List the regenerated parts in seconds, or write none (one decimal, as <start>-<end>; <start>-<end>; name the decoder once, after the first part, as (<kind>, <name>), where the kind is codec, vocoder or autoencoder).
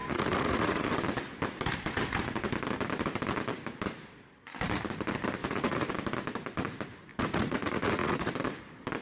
0.0-0.9 (vocoder, Vocos); 5.4-5.9; 7.1-8.3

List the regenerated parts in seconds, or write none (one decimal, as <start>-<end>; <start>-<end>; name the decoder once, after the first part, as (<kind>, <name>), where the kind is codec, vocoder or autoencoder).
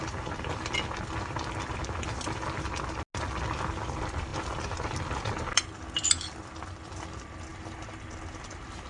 none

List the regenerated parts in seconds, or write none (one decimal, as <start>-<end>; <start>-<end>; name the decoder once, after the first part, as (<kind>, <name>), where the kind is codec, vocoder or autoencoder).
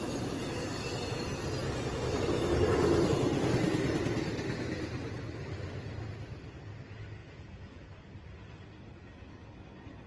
7.2-7.8 (vocoder, Vocos)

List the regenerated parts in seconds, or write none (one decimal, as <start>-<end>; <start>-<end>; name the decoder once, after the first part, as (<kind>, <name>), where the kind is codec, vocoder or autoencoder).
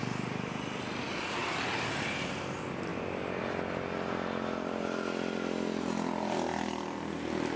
none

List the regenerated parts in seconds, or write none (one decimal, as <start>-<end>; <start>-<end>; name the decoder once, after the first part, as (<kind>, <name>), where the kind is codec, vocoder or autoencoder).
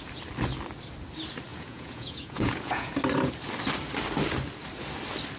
1.5-2.9 (vocoder, Vocos)